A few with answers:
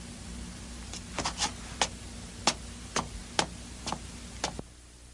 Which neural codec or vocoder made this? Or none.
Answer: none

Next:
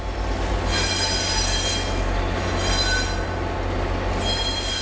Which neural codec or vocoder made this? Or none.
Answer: none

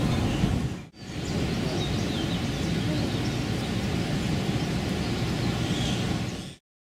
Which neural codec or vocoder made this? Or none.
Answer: none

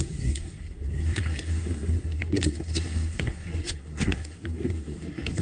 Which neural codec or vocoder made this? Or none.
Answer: codec, SNAC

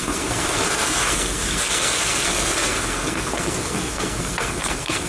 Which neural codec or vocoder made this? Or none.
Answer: codec, SNAC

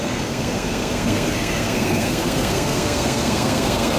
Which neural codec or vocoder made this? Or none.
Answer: codec, SNAC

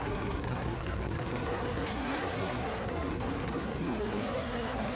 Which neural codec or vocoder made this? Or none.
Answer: codec, SNAC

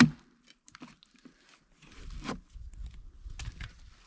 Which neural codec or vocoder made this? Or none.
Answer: none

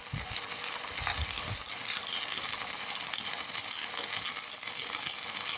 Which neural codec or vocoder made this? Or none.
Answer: none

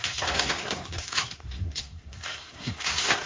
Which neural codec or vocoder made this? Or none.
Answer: codec, SNAC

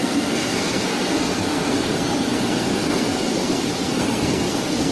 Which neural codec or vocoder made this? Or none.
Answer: codec, SNAC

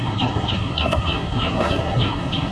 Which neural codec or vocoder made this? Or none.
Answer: codec, SNAC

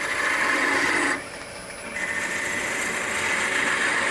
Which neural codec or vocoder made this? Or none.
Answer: none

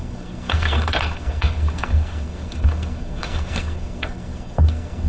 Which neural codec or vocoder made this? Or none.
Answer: codec, SNAC